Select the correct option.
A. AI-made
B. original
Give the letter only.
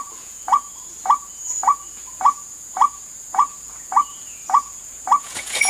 A